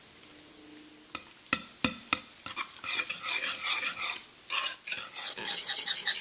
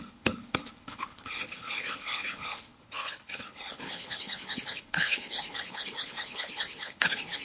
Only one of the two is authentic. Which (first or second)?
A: first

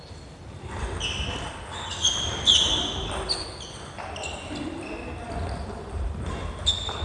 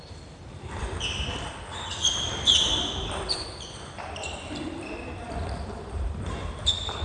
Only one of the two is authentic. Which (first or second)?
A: first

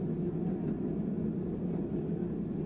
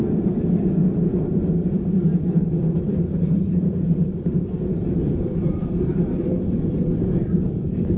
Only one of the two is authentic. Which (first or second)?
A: first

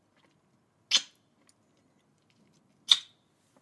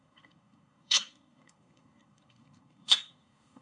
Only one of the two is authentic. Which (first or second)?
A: first